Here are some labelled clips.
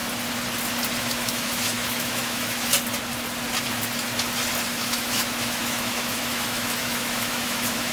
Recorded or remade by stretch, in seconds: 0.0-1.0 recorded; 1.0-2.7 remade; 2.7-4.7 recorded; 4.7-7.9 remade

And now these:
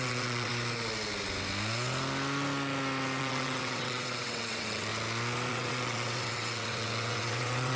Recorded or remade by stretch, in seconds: 0.0-0.5 remade; 0.5-3.2 recorded; 3.2-4.9 remade; 4.9-5.5 recorded; 5.5-7.8 remade